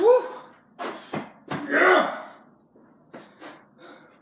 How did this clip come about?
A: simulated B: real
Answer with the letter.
B